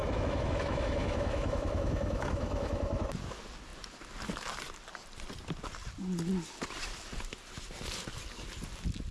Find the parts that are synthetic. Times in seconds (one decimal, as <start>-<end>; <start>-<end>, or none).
0.0-3.0

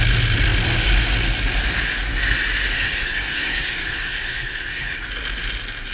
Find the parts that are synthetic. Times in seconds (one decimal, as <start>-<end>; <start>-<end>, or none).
2.7-5.1

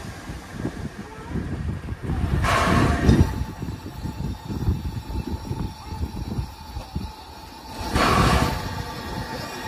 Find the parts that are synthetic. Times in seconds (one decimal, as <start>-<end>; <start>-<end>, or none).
0.5-2.7

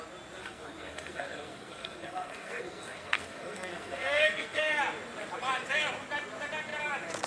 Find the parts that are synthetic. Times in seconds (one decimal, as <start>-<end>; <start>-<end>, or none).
0.4-4.8

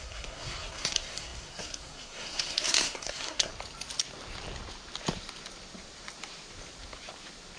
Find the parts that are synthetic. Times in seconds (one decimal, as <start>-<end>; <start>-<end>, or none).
0.0-3.5

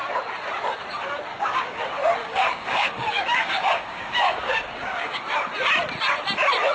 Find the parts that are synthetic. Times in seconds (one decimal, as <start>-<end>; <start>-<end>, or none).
1.3-1.8; 2.2-5.2